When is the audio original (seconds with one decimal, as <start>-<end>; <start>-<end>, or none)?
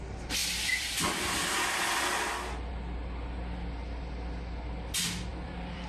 0.0-0.4; 2.7-5.3